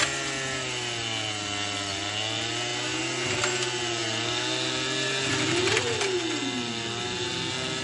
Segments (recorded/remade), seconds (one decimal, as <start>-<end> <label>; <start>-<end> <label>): 0.0-7.8 recorded